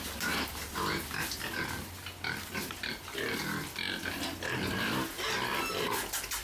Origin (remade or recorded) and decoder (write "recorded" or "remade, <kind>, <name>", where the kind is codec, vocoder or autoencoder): recorded